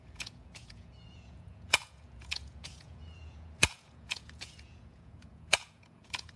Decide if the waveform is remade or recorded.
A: remade